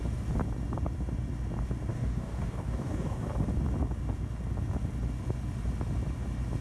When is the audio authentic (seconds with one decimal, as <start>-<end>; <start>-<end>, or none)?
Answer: 0.0-1.9; 3.3-6.6